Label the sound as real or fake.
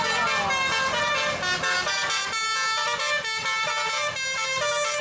real